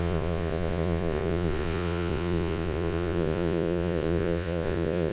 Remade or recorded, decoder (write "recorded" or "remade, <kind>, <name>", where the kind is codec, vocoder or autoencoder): remade, vocoder, Vocos